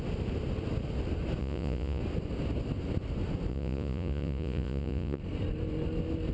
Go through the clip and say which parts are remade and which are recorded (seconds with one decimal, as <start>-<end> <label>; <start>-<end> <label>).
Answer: 0.0-1.4 recorded; 1.4-2.0 remade; 2.0-3.5 recorded; 3.5-5.2 remade; 5.2-6.3 recorded